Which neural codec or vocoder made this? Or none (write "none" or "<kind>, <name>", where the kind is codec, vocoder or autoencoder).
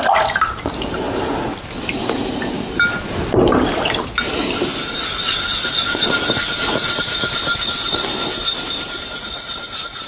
none